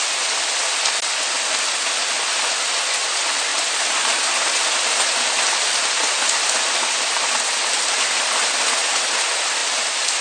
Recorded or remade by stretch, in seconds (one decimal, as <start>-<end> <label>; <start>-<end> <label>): 0.0-3.5 recorded; 3.5-8.0 remade; 8.0-10.2 recorded

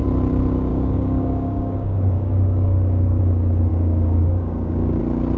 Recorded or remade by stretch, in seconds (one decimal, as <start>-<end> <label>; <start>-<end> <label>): 0.0-0.7 recorded; 0.7-3.2 remade; 3.2-3.7 recorded; 3.7-5.0 remade; 5.0-5.4 recorded

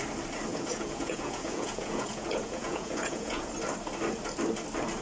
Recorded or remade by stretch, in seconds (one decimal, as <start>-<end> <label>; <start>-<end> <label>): 0.0-0.5 recorded; 0.5-3.5 remade; 3.5-5.0 recorded

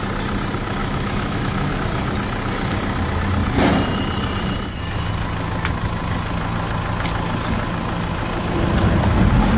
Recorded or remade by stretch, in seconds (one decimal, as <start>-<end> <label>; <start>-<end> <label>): 0.0-0.8 recorded; 0.8-1.7 remade; 1.7-9.6 recorded

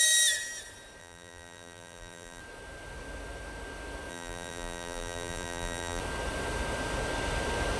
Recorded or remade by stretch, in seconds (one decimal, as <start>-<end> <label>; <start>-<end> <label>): 0.0-1.0 recorded; 1.0-2.4 remade; 2.4-4.1 recorded; 4.1-6.0 remade; 6.0-7.8 recorded

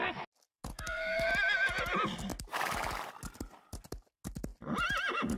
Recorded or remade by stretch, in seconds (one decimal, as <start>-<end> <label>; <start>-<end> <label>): 0.0-0.7 recorded; 0.7-1.3 remade; 1.3-5.4 recorded

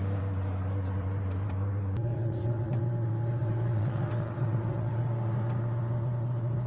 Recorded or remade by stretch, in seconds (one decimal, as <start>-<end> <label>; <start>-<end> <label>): 0.0-2.1 recorded; 2.1-2.8 remade; 2.8-3.4 recorded; 3.4-5.0 remade; 5.0-6.7 recorded

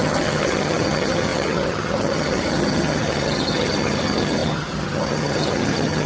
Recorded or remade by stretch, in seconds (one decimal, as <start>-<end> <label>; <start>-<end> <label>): 0.0-6.1 remade